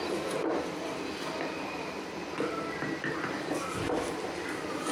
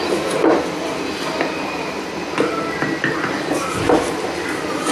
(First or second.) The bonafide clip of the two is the second